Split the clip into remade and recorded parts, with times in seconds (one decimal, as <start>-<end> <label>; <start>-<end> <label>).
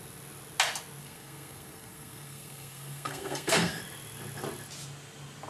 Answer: 0.0-1.0 recorded; 1.0-3.8 remade; 3.8-5.5 recorded